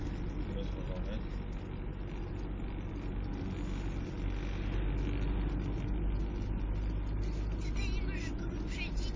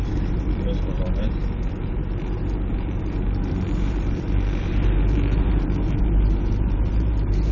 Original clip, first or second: first